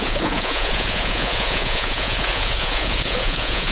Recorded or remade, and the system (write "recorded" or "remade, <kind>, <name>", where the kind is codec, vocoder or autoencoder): remade, vocoder, Vocos